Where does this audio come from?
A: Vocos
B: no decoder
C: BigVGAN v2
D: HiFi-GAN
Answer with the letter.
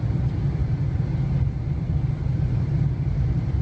B